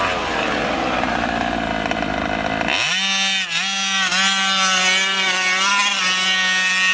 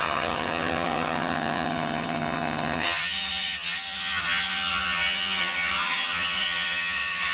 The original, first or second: first